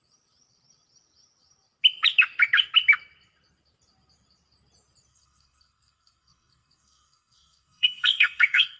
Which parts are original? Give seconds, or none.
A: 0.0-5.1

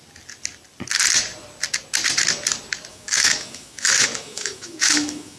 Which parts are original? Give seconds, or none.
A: 0.0-2.9

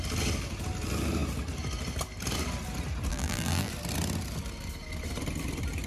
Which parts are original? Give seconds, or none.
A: 0.0-3.1; 3.7-5.9

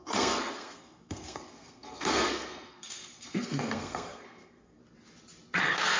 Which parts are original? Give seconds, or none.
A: 4.8-5.6

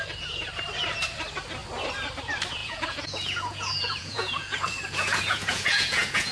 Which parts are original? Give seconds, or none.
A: 0.0-2.6

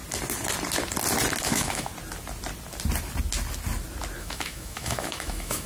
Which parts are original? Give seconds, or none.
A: 0.0-1.4; 1.9-4.2

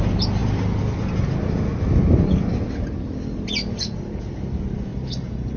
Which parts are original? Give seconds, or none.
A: 0.0-4.9